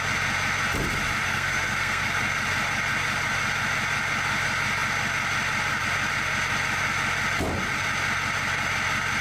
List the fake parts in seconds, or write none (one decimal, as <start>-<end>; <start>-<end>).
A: 1.2-2.0